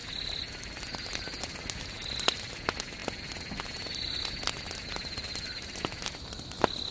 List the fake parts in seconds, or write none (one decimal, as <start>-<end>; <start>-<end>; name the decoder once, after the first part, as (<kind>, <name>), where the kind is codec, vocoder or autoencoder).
none